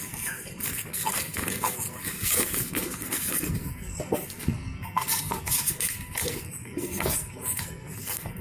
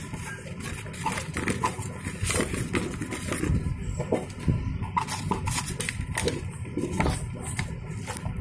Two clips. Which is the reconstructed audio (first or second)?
first